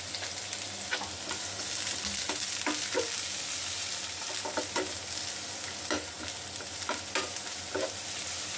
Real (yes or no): yes